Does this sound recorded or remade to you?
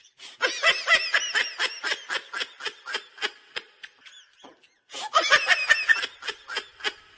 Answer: recorded